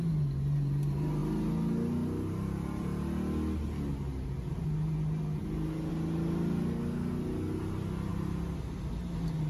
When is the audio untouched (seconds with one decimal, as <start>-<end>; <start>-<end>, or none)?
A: 0.0-9.5

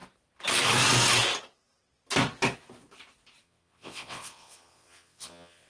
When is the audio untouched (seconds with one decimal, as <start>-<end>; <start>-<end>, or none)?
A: 0.0-3.4

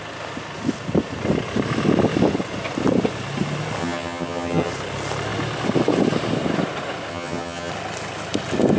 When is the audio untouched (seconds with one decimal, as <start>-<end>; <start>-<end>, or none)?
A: 0.0-3.8; 4.7-7.1; 7.7-8.8